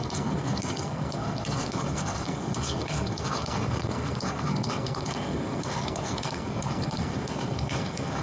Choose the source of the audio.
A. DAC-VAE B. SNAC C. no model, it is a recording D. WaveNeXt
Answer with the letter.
B